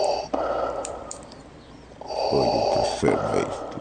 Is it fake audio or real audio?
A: fake